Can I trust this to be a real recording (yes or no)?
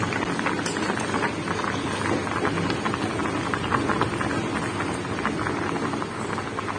yes